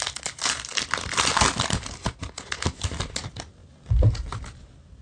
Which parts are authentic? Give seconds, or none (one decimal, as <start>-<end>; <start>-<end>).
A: 0.0-5.0